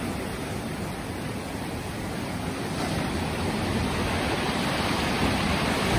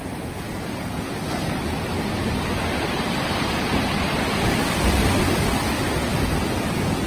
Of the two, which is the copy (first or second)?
first